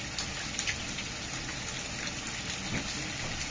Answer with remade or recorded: recorded